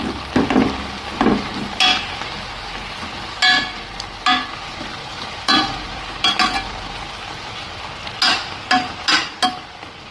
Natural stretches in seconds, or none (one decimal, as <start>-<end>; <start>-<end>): 0.0-5.1; 6.3-10.1